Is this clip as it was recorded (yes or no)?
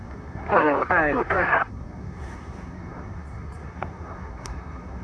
no